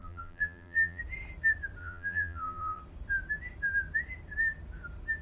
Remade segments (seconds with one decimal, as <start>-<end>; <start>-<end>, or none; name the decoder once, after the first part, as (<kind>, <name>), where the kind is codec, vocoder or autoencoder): 0.0-1.0 (vocoder, BigVGAN v2); 1.8-2.8